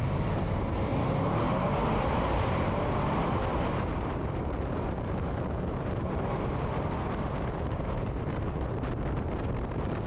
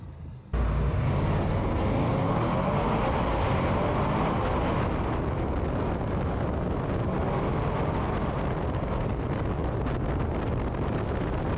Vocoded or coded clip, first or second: first